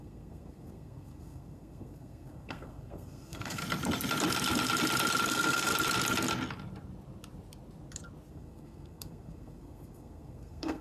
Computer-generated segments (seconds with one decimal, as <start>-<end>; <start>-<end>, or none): 0.0-3.6; 5.3-5.7; 8.3-10.8